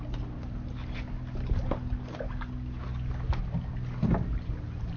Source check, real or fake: real